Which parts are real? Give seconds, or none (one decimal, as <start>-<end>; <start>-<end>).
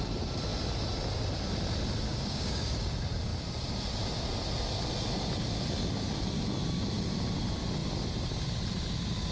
0.0-2.1; 2.9-9.3